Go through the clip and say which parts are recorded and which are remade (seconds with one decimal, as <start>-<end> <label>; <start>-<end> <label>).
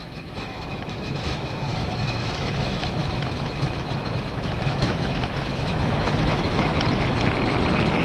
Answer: 0.0-6.7 remade; 6.7-8.0 recorded